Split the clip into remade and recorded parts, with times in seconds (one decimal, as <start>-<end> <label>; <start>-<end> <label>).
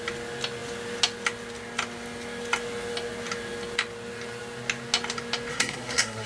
0.0-5.5 recorded; 5.5-6.3 remade